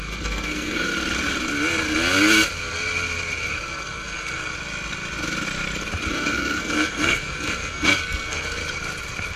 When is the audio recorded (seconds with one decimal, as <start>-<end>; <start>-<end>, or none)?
0.9-3.5; 4.5-6.1; 8.6-9.4